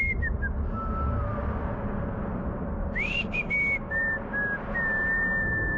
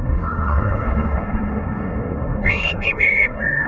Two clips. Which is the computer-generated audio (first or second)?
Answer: second